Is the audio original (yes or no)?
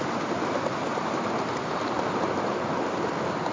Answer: yes